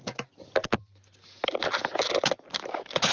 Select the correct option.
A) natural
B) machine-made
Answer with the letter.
A